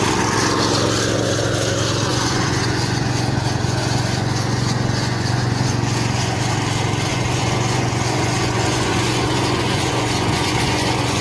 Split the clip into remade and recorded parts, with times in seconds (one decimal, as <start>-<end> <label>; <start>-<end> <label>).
0.0-2.1 recorded; 2.1-6.5 remade; 6.5-7.1 recorded; 7.1-11.2 remade